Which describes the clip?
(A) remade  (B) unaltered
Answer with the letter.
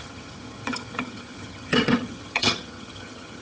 A